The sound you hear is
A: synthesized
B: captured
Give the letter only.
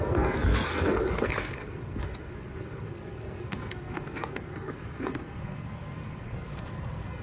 A